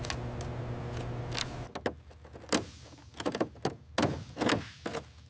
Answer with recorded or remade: recorded